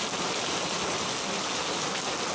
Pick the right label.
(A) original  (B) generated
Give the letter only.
A